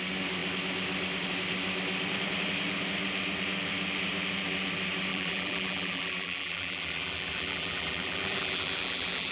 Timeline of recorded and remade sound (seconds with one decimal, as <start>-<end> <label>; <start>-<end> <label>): 0.0-5.1 recorded; 5.1-9.3 remade